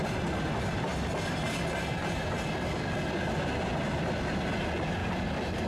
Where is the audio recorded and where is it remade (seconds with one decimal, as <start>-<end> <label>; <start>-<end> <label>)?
0.0-5.0 recorded; 5.0-5.7 remade